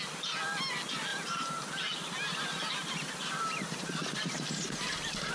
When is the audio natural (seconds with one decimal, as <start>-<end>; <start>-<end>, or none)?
0.0-1.1; 4.3-5.3